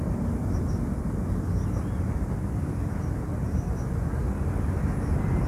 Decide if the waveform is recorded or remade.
recorded